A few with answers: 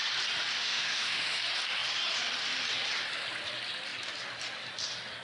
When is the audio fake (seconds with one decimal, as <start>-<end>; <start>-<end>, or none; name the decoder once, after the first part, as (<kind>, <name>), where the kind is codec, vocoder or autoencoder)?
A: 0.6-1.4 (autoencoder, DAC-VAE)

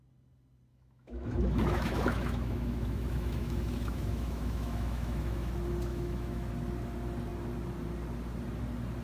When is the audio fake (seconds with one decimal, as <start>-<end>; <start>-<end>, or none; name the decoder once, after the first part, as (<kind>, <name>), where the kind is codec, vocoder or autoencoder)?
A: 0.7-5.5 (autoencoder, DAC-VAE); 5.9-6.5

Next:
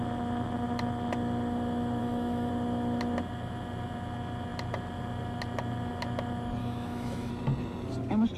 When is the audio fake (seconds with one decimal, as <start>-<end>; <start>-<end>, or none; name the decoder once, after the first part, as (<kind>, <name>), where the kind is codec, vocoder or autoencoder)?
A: 2.0-2.5 (autoencoder, DAC-VAE); 6.6-7.3

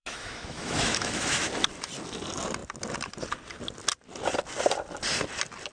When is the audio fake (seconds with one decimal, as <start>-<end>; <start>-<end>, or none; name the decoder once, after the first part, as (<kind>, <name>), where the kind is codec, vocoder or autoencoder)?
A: 0.0-1.5 (autoencoder, DAC-VAE)

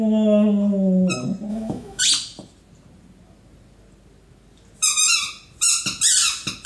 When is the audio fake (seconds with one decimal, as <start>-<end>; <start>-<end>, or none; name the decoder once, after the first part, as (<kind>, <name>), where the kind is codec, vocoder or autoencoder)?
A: 1.5-2.0 (autoencoder, DAC-VAE)

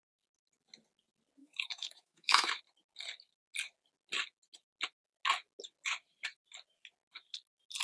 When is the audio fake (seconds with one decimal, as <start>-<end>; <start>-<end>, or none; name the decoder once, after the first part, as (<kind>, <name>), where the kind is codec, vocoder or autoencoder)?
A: 1.4-2.6 (autoencoder, DAC-VAE)